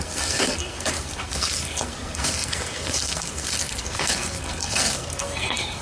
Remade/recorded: remade